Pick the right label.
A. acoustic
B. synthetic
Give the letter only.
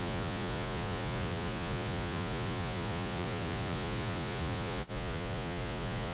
B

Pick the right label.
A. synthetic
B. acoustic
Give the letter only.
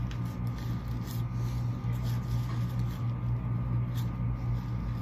B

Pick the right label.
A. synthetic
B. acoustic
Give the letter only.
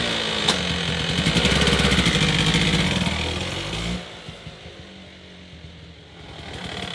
B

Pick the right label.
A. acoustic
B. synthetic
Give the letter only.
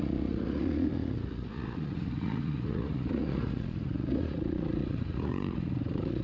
B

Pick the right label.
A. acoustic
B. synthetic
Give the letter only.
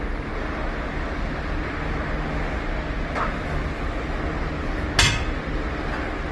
A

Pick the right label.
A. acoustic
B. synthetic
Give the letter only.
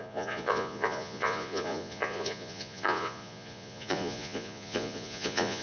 B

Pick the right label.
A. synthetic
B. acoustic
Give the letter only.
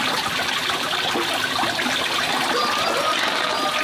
B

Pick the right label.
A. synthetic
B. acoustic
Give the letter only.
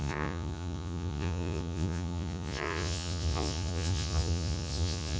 A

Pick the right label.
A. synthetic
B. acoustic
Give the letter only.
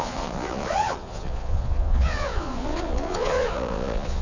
A